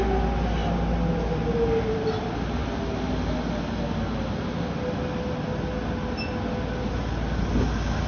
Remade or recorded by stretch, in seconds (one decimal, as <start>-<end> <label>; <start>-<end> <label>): 0.0-8.1 recorded